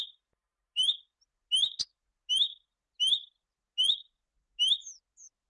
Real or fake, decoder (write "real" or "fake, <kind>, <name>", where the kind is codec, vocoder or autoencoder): real